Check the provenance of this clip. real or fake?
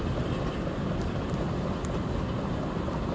real